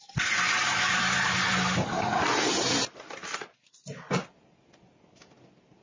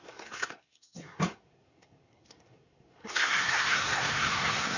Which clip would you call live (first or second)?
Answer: first